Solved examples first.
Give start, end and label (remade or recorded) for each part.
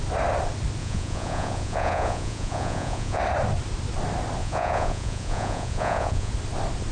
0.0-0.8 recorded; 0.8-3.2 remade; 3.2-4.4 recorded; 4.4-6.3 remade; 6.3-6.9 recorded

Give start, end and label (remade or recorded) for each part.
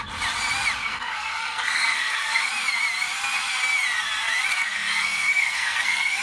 0.0-0.8 recorded; 0.8-2.5 remade; 2.5-4.5 recorded; 4.5-6.2 remade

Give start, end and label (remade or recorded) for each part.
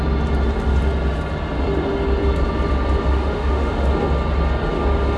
0.0-3.1 recorded; 3.1-3.9 remade; 3.9-5.2 recorded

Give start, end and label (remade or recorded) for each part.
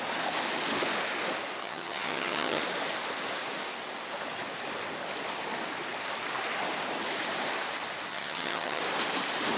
0.0-1.6 recorded; 1.6-2.6 remade; 2.6-8.1 recorded; 8.1-8.8 remade; 8.8-9.6 recorded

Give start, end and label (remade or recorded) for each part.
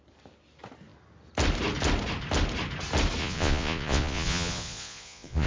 0.0-3.2 recorded; 3.2-5.5 remade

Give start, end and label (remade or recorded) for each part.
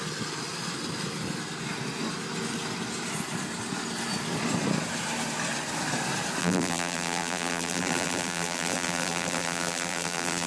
0.0-6.4 recorded; 6.4-10.5 remade